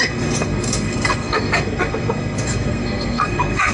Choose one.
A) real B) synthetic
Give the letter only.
B